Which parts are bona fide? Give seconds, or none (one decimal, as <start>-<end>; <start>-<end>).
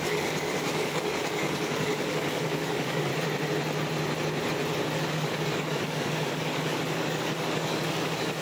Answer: 3.1-5.1